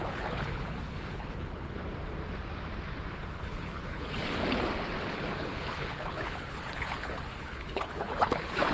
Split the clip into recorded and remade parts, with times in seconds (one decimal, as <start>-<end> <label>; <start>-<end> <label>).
0.0-1.8 remade; 1.8-3.3 recorded; 3.3-4.4 remade; 4.4-5.1 recorded; 5.1-8.7 remade